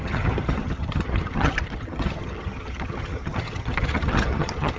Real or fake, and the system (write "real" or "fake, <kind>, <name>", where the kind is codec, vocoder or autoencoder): fake, vocoder, HiFi-GAN